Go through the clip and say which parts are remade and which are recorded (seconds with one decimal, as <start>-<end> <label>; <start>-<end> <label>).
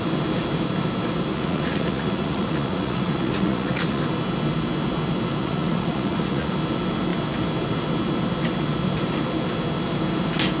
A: 0.0-1.3 recorded; 1.3-4.0 remade; 4.0-5.4 recorded; 5.4-6.5 remade; 6.5-10.6 recorded